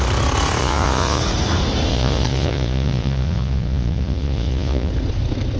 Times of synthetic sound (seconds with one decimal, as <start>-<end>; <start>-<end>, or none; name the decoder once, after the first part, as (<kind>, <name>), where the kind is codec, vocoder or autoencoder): 0.6-1.2 (vocoder, Vocos); 1.9-4.9